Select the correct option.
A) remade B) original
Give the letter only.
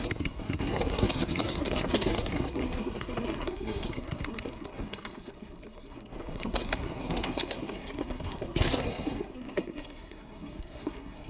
A